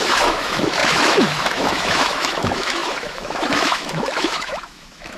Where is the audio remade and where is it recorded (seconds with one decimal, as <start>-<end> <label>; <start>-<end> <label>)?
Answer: 0.0-5.2 remade